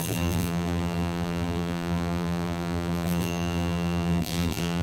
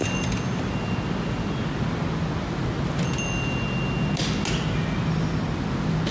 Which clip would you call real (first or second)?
second